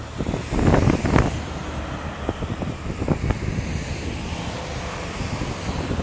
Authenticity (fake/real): real